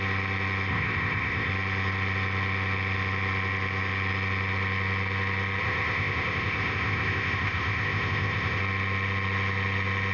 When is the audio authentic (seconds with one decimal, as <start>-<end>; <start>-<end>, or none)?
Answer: 0.0-0.7; 1.5-5.6; 8.6-10.1